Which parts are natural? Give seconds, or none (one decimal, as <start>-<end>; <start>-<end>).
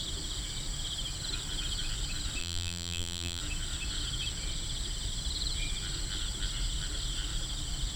0.0-2.4; 3.4-8.0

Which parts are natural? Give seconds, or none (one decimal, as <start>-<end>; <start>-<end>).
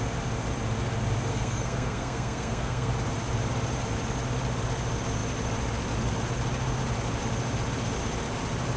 0.0-1.3; 2.9-8.8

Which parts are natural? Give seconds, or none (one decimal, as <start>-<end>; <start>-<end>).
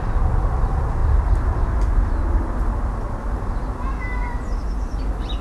0.0-1.0; 2.1-5.4